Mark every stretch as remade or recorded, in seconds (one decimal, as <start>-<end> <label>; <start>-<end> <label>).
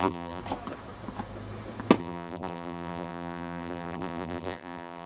0.0-0.4 remade; 0.4-2.0 recorded; 2.0-5.1 remade